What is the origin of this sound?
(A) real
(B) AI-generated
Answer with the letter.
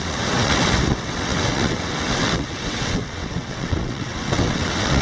B